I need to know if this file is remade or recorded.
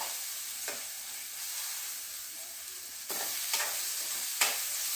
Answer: remade